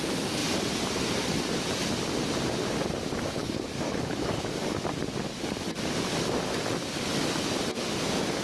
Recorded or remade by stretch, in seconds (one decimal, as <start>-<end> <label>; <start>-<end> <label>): 0.0-3.4 recorded; 3.4-4.8 remade; 4.8-8.4 recorded